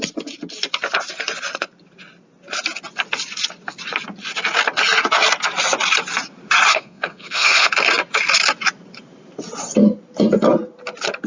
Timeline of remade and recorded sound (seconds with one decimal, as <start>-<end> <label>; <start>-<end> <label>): 0.0-6.7 recorded; 6.7-7.7 remade; 7.7-11.3 recorded